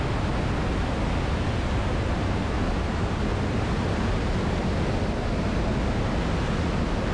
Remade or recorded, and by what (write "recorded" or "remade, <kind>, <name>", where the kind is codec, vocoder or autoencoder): recorded